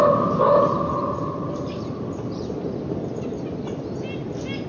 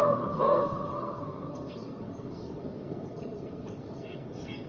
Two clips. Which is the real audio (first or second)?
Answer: first